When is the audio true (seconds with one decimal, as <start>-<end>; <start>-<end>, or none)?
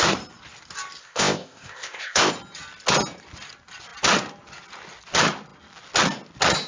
0.0-1.0; 2.3-6.7